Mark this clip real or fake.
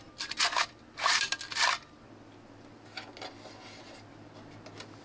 real